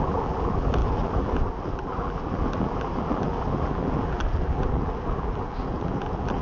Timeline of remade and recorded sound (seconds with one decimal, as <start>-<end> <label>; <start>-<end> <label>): 0.0-6.4 remade

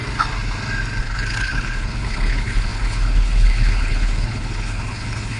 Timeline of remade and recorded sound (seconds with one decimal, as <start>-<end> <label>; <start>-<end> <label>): 0.0-1.0 recorded; 1.0-5.4 remade

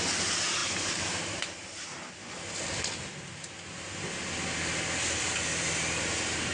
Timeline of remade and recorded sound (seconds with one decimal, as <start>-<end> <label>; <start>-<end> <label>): 0.0-0.6 recorded; 0.6-2.1 remade; 2.1-6.5 recorded

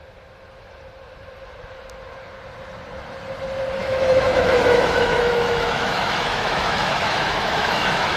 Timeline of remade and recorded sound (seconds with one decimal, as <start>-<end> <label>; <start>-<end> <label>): 0.0-3.8 recorded; 3.8-8.2 remade

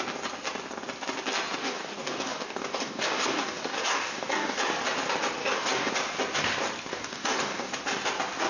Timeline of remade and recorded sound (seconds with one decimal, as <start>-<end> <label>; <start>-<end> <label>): 0.0-1.6 recorded; 1.6-4.6 remade; 4.6-5.4 recorded; 5.4-5.9 remade; 5.9-6.9 recorded; 6.9-7.8 remade; 7.8-8.5 recorded

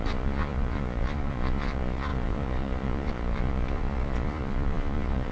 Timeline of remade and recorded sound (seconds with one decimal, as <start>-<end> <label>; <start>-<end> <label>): 0.0-5.3 remade

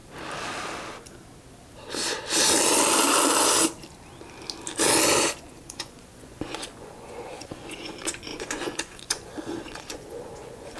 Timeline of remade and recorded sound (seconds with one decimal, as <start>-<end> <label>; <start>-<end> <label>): 0.0-5.3 recorded; 5.3-10.8 remade

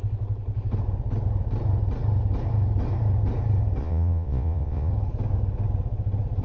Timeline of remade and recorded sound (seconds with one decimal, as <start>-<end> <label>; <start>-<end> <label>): 0.0-3.8 recorded; 3.8-4.9 remade; 4.9-6.4 recorded